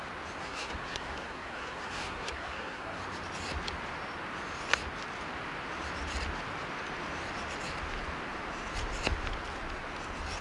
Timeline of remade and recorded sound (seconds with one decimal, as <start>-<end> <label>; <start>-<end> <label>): 0.0-0.4 recorded; 0.4-3.0 remade; 3.0-10.4 recorded